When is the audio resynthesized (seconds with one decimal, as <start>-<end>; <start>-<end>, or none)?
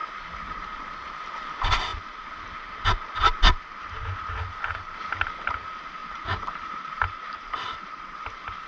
6.0-8.0